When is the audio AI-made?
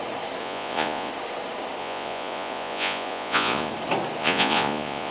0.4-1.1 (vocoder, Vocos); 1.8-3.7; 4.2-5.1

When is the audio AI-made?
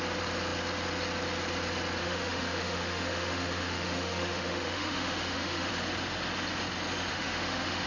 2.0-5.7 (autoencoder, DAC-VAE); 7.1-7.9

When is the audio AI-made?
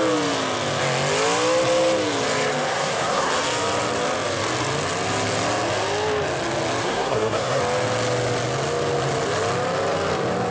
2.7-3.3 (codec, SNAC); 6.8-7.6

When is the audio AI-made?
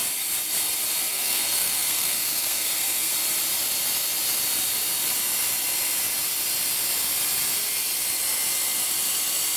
1.1-3.1 (codec, SNAC)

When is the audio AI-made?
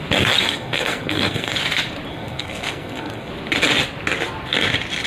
0.4-1.6 (codec, SNAC); 2.1-3.3